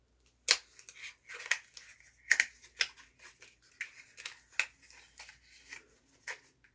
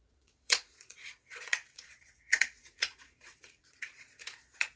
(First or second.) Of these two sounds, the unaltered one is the first